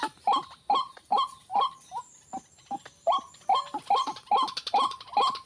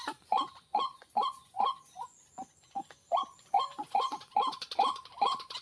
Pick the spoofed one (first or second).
second